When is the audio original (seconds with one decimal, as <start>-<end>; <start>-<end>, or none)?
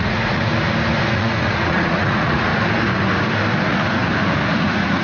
0.5-1.1; 2.5-3.6; 4.0-4.6